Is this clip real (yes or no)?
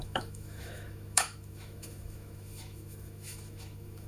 no